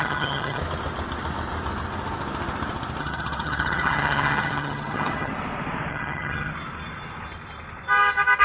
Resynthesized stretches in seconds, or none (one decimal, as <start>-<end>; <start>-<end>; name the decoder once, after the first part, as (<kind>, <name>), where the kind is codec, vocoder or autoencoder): 0.0-0.6 (vocoder, HiFi-GAN); 3.0-5.3; 5.9-6.5